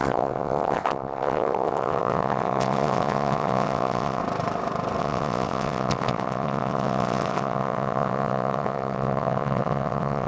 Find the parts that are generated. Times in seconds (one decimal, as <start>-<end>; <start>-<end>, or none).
0.0-4.2; 5.0-10.3